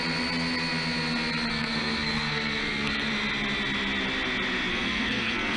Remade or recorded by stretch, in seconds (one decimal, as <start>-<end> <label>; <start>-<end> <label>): 0.0-1.5 recorded; 1.5-3.1 remade; 3.1-4.7 recorded; 4.7-5.6 remade